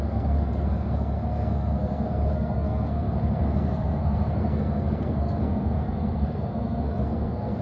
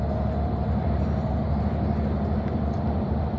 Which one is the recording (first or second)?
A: second